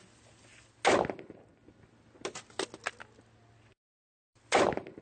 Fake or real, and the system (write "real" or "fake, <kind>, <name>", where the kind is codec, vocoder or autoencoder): real